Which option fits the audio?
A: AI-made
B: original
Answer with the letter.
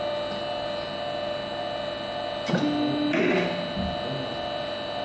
B